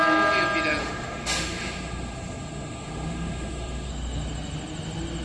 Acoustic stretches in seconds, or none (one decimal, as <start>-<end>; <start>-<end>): 0.0-0.8; 3.9-5.2